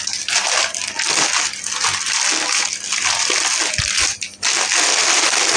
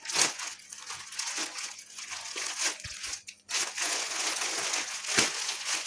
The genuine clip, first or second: first